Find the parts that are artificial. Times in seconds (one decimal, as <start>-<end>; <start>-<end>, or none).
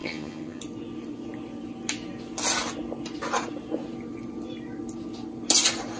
0.0-0.6